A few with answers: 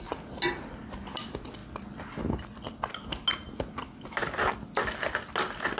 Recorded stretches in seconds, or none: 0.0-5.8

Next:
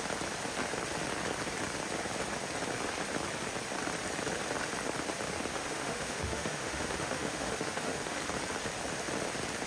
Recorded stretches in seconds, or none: 0.0-5.5; 8.2-9.7

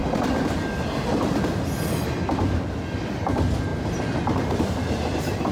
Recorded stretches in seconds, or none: 0.0-5.5